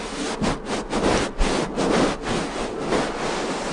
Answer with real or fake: real